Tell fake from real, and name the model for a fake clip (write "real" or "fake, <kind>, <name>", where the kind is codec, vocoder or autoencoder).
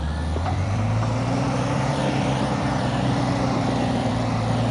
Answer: fake, vocoder, BigVGAN v2